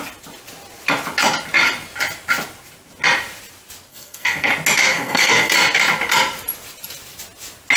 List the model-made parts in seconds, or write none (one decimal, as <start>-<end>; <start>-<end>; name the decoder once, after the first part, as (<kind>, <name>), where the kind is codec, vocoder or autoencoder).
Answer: 3.9-4.5 (codec, SNAC); 4.9-5.5